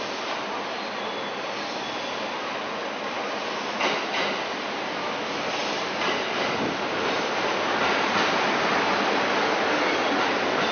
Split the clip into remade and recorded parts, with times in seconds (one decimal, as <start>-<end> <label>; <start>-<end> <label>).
0.0-10.7 recorded